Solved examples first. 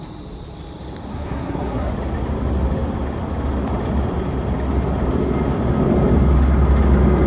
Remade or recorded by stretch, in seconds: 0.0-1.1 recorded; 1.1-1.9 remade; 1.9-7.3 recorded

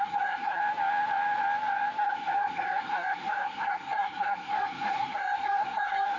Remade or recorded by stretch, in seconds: 0.0-0.6 remade; 0.6-2.0 recorded; 2.0-6.2 remade